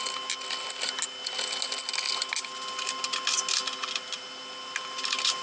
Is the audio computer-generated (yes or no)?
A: no